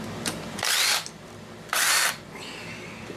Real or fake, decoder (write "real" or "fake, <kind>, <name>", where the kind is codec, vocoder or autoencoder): fake, vocoder, BigVGAN v2